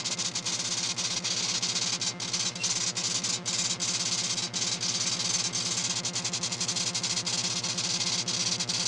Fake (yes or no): no